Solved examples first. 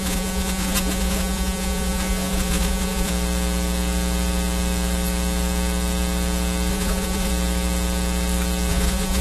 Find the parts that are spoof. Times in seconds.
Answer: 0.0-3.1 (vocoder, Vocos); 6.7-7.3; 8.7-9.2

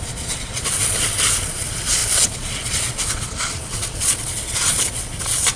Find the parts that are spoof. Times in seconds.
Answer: 0.0-5.6 (vocoder, Vocos)

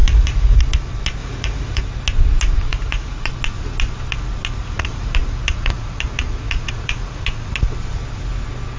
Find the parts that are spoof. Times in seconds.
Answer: 0.0-0.6 (vocoder, Vocos); 1.2-1.8; 2.7-3.3; 4.6-7.5